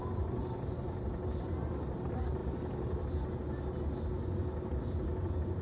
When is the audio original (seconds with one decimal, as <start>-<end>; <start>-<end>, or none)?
0.0-5.6